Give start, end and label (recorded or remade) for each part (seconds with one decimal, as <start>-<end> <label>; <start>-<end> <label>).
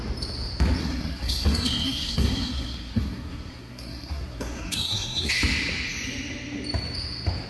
0.0-0.8 recorded; 0.8-5.3 remade; 5.3-7.5 recorded